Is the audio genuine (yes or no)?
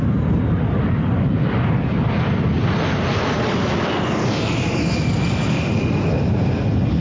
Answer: yes